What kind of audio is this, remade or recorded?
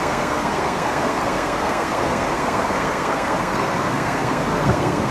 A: remade